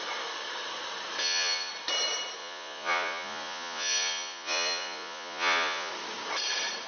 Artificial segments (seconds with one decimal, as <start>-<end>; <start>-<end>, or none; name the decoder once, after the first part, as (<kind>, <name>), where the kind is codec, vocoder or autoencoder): 1.2-1.7 (vocoder, Vocos); 2.4-5.9